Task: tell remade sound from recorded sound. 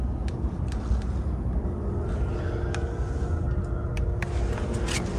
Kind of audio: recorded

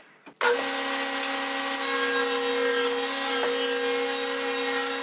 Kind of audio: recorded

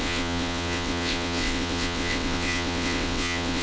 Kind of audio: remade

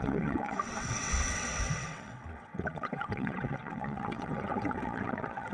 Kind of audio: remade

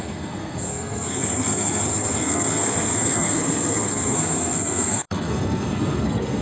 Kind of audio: remade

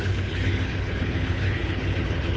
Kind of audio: remade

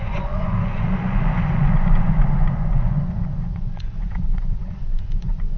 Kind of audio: remade